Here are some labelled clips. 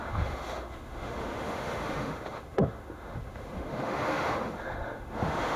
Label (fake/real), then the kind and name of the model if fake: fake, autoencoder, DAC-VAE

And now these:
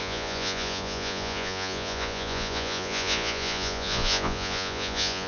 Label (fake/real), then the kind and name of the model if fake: fake, vocoder, Vocos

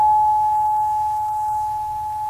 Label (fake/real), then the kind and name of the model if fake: real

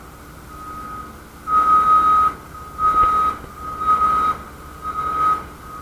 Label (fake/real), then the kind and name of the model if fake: real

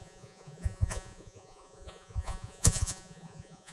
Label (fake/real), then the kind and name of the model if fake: fake, vocoder, Vocos